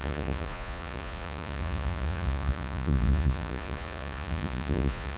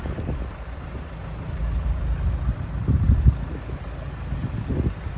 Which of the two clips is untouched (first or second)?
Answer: second